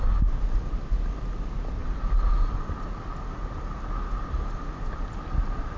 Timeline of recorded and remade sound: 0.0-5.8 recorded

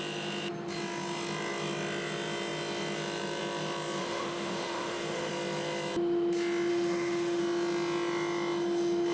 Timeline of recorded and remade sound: 0.0-4.0 recorded; 4.0-5.3 remade; 5.3-6.7 recorded; 6.7-7.4 remade; 7.4-9.1 recorded

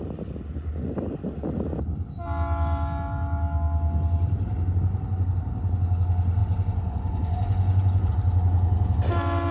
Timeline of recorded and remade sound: 0.0-6.4 recorded; 6.4-8.1 remade; 8.1-9.5 recorded

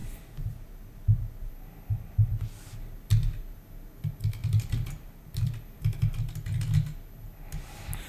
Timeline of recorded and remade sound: 0.0-4.4 recorded; 4.4-5.6 remade; 5.6-8.1 recorded

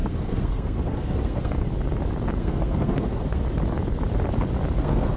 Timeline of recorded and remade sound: 0.0-1.6 remade; 1.6-2.4 recorded; 2.4-3.4 remade; 3.4-4.8 recorded; 4.8-5.2 remade

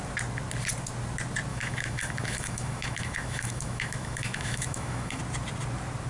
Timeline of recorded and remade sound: 0.0-1.5 recorded; 1.5-5.2 remade; 5.2-6.1 recorded

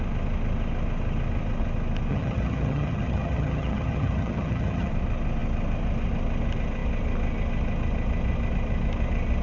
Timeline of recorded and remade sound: 0.0-2.1 recorded; 2.1-4.9 remade; 4.9-9.4 recorded